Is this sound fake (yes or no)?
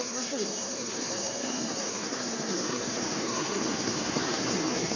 yes